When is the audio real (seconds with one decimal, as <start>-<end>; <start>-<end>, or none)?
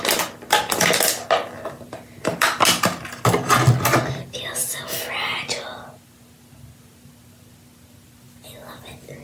0.0-9.2